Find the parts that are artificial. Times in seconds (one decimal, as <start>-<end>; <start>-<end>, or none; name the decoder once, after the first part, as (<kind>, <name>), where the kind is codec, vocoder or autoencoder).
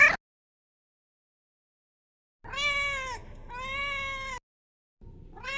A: none